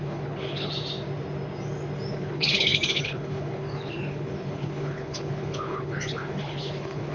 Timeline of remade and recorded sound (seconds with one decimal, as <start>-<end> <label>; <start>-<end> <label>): 0.0-0.7 remade; 0.7-2.1 recorded; 2.1-7.1 remade